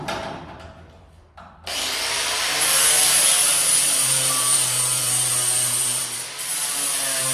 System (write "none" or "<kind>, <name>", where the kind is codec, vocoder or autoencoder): vocoder, BigVGAN v2